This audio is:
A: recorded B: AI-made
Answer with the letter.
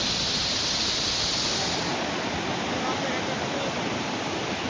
A